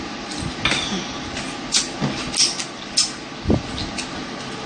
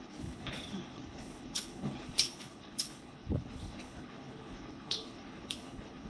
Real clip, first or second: first